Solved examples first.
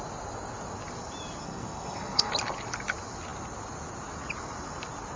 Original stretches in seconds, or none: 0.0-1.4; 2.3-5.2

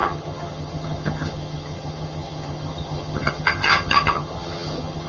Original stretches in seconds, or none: none

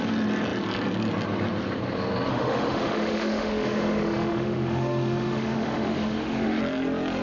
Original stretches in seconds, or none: 0.0-2.3; 6.6-7.2